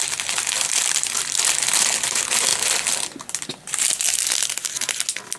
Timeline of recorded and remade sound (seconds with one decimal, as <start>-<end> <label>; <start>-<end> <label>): 0.0-5.4 recorded